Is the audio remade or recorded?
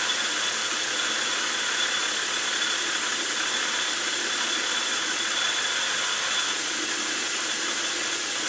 recorded